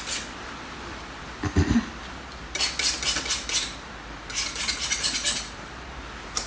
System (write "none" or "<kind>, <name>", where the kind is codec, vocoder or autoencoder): none